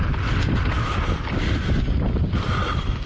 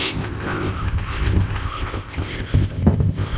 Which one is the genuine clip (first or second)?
first